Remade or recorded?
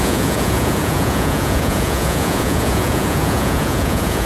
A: remade